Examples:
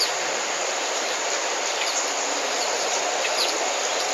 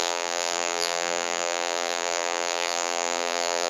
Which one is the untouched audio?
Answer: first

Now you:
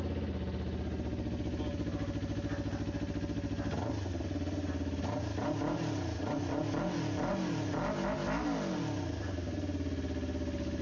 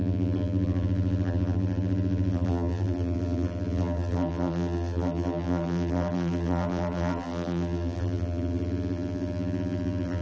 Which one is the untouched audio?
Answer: first